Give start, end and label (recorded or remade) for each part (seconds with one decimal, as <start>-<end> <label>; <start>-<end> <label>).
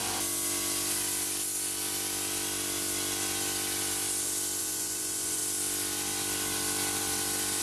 0.0-4.6 recorded; 4.6-5.4 remade; 5.4-7.6 recorded